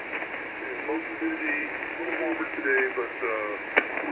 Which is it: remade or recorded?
recorded